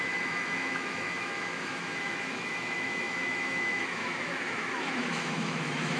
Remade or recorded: remade